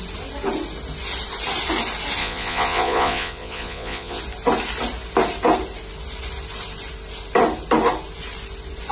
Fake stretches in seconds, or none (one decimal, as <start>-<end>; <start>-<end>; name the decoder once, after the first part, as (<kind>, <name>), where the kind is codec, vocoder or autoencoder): 2.2-4.2 (vocoder, Vocos)